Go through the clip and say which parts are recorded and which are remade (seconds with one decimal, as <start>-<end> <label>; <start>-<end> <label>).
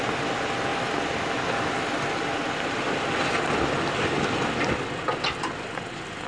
0.0-6.3 recorded